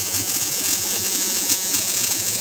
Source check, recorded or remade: remade